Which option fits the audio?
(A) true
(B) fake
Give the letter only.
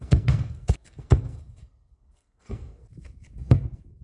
B